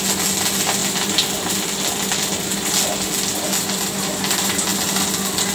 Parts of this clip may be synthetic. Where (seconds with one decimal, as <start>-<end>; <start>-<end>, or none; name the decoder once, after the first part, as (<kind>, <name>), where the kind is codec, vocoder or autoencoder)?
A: none